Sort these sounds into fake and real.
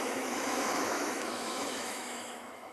fake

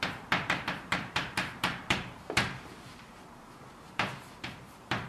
fake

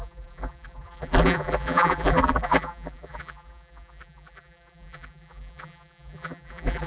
fake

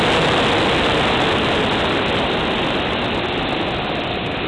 real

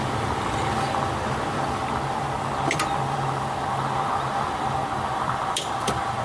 fake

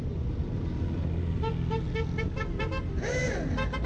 real